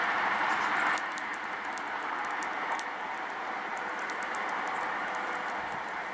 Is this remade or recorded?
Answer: recorded